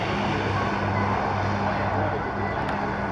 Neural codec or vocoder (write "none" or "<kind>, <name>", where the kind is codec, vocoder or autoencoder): none